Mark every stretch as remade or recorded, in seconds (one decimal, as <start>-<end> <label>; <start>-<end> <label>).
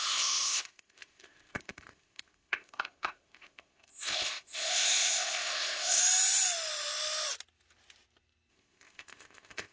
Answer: 0.0-6.0 remade; 6.0-8.5 recorded; 8.5-9.7 remade